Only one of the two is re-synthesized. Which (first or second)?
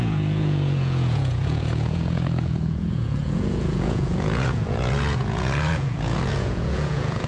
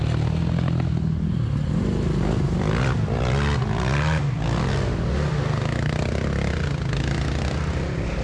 first